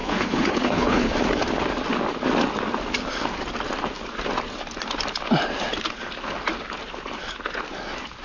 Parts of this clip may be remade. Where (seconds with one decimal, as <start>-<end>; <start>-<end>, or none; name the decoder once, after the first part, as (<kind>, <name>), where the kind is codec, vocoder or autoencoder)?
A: 0.0-1.1 (codec, HILCodec)